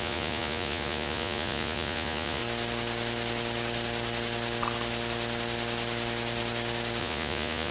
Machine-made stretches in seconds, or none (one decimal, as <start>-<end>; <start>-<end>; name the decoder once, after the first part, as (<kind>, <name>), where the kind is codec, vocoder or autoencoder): 0.0-2.4 (vocoder, Vocos); 7.0-7.7